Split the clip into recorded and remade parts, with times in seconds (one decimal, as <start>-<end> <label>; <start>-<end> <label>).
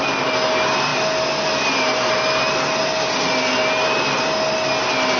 0.0-5.2 recorded